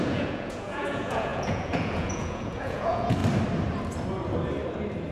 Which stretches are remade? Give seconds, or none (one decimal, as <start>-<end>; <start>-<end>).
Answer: 0.0-3.2